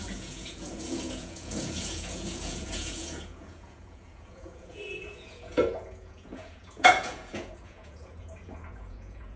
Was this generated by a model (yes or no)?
yes